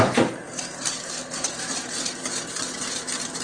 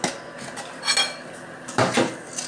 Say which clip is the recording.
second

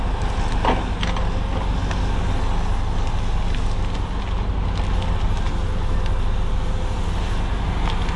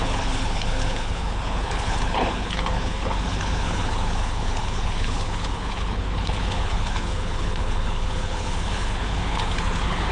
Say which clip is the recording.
first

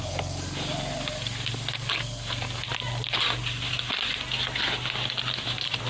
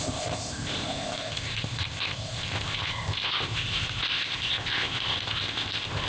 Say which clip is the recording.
first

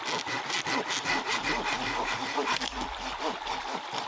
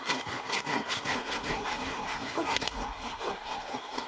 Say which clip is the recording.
first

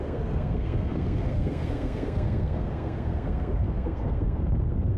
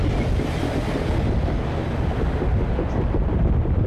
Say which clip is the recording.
second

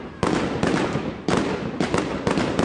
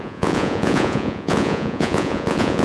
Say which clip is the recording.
first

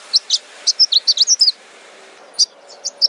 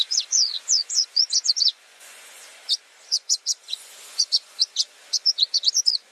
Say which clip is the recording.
first